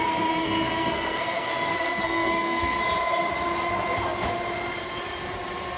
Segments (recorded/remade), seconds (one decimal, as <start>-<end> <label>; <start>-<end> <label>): 0.0-2.8 remade; 2.8-5.8 recorded